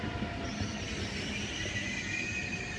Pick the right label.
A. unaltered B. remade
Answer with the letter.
A